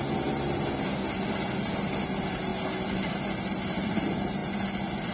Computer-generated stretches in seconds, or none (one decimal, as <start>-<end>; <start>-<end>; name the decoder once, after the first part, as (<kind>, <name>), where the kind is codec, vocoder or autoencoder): none